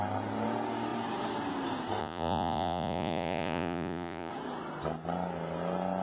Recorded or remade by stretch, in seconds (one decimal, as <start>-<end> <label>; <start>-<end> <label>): 0.0-2.0 recorded; 2.0-4.3 remade; 4.3-6.0 recorded